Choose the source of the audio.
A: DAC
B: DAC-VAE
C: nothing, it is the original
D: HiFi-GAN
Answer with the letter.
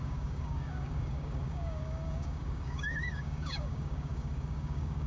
A